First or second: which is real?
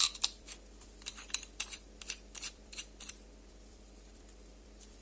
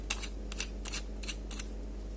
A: second